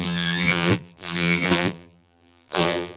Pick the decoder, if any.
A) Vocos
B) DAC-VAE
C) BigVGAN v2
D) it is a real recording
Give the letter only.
C